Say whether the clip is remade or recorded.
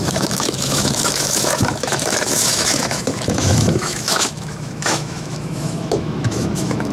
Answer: remade